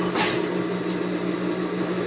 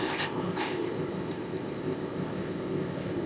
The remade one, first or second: second